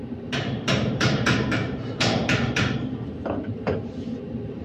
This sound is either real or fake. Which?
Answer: fake